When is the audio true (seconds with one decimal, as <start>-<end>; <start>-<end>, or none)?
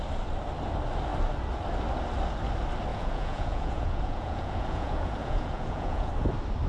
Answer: 0.0-2.9; 6.1-6.7